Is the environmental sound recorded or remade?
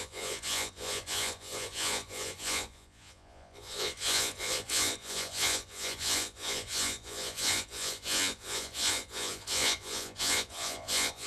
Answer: remade